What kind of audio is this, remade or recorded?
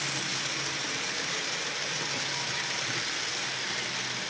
recorded